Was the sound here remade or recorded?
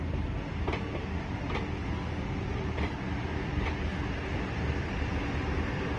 recorded